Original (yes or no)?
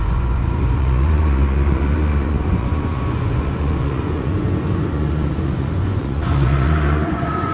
no